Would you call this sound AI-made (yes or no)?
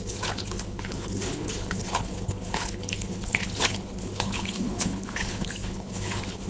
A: yes